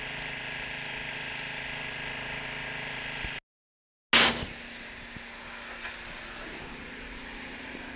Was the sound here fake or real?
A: real